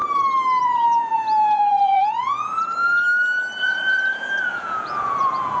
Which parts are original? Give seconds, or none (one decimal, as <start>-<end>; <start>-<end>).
0.0-0.6; 2.6-3.6